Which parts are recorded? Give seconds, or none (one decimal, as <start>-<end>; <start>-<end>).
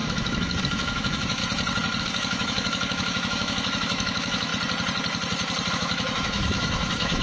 1.4-2.0; 4.5-5.7